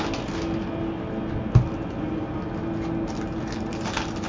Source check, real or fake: real